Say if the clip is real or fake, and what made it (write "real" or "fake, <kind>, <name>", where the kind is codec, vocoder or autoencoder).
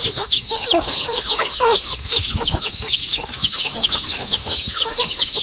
fake, autoencoder, DAC-VAE